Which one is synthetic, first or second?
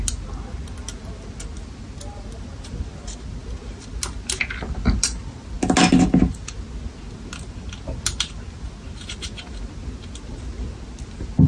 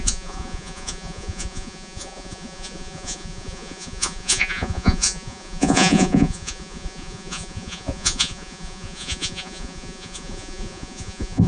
second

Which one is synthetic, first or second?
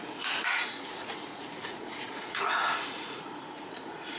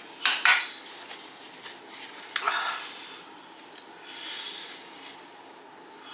first